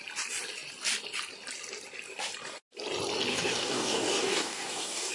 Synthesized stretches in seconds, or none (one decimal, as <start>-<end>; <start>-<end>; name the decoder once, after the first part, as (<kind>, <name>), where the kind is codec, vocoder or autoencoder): 3.3-5.1 (codec, DAC)